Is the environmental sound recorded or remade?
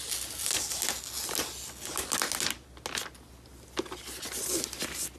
recorded